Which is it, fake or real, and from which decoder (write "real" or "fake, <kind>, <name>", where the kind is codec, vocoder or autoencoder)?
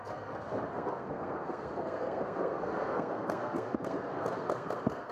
fake, codec, SNAC